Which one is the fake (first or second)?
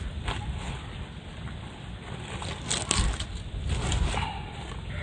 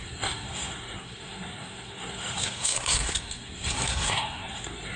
second